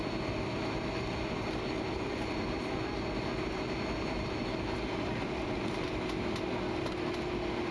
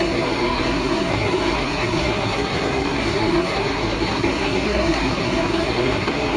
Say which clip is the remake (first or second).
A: second